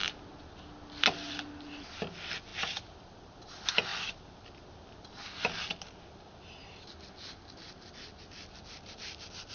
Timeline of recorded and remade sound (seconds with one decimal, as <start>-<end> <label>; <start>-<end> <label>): 0.0-9.5 recorded